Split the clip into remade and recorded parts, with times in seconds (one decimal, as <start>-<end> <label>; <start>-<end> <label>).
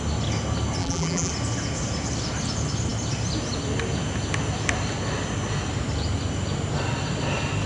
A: 0.0-0.8 recorded; 0.8-1.3 remade; 1.3-7.7 recorded